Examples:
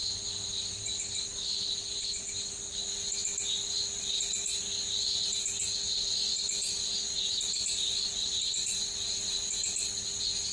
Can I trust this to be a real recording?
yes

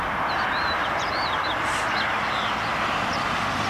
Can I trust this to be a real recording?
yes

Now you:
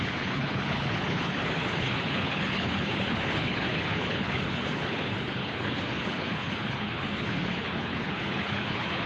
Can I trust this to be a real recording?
no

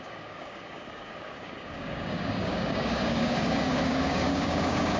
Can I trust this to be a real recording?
no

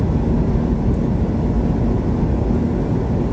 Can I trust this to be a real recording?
yes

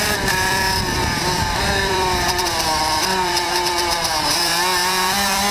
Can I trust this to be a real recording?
no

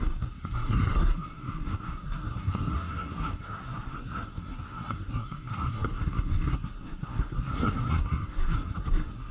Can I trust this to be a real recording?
no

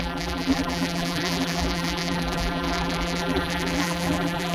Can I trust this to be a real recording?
no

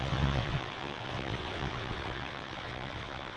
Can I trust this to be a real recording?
no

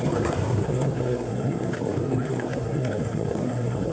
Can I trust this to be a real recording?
no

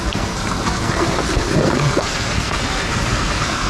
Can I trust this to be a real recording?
no